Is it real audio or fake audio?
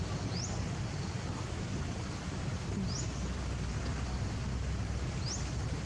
real